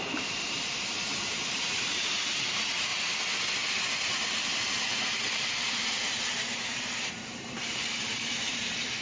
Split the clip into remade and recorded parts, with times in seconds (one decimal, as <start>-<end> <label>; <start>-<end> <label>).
0.0-2.9 remade; 2.9-4.7 recorded; 4.7-9.0 remade